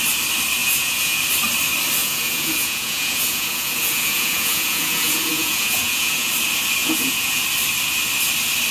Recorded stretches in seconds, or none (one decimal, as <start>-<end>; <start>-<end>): 0.0-0.6; 1.2-2.0; 6.3-6.8; 7.4-8.7